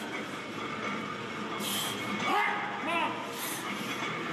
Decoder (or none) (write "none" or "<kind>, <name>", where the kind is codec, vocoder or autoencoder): none